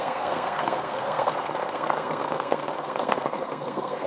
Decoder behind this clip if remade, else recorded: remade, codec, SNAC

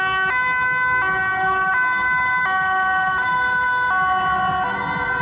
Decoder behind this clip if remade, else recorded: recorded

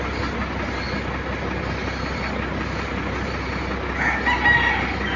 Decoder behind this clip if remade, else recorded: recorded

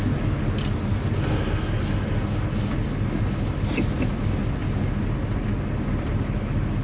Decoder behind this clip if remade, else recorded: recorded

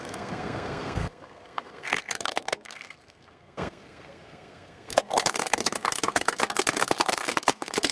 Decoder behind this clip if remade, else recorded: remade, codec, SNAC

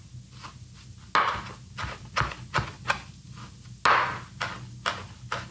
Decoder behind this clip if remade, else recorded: recorded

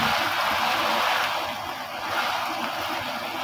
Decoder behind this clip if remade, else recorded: recorded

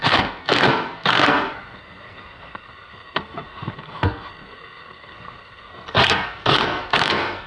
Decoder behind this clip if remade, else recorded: remade, codec, SNAC